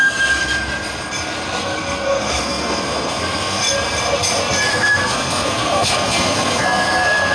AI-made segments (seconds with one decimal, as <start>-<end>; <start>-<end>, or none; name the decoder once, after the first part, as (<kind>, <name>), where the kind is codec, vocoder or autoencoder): 0.0-0.4 (codec, SNAC); 1.6-3.6; 4.7-7.3